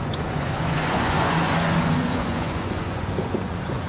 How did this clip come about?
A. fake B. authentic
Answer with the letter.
A